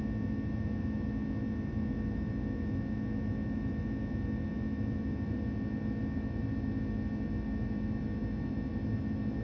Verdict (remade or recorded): recorded